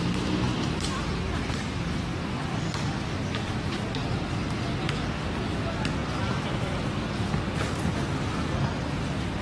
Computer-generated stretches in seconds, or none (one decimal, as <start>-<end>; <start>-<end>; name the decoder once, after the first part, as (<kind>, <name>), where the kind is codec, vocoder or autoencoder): none